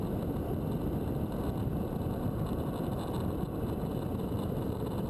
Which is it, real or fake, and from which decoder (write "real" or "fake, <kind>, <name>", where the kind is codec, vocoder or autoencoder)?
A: real